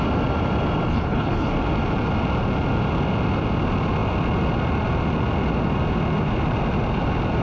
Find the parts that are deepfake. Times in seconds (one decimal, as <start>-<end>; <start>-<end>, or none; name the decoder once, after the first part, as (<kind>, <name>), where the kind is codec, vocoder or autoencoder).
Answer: 0.9-1.5 (codec, HILCodec)